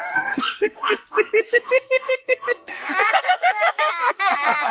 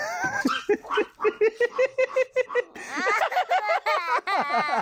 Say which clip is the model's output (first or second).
first